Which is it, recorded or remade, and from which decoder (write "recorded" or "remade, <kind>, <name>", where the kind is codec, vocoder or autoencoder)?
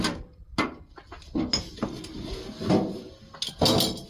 recorded